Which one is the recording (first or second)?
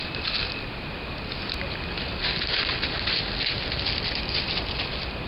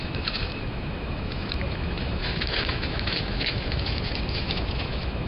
first